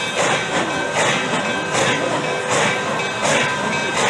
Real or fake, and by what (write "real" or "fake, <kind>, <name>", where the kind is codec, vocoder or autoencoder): real